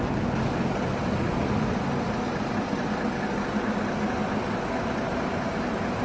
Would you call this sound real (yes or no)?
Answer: yes